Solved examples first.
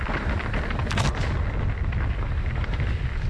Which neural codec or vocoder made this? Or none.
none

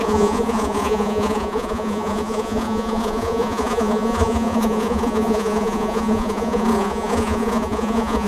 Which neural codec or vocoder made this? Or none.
vocoder, Vocos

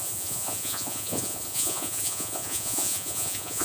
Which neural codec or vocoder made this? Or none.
vocoder, Vocos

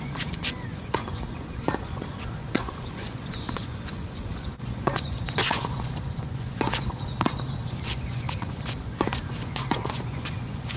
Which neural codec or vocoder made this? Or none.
vocoder, Vocos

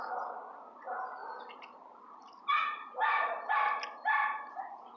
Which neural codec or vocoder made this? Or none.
none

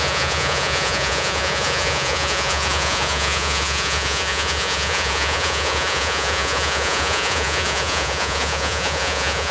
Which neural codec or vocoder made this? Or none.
vocoder, Vocos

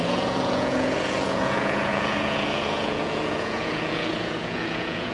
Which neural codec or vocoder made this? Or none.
vocoder, Vocos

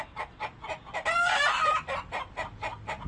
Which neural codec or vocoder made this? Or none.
none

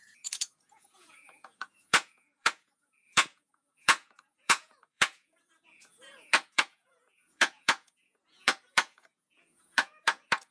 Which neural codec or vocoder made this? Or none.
vocoder, Vocos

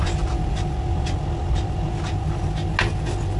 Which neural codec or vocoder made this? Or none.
none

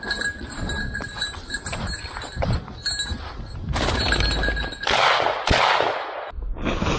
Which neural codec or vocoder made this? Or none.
none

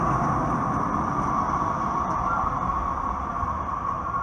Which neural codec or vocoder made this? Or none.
none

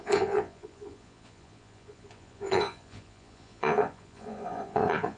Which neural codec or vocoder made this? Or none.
vocoder, Vocos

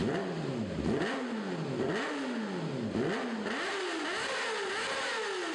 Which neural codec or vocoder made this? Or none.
none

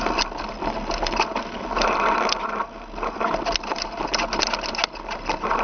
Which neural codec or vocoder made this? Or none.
none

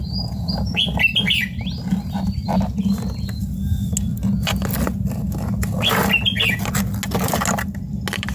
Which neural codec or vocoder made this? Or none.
none